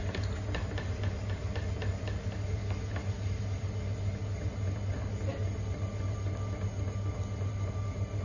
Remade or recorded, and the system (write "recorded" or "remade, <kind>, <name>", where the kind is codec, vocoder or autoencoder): recorded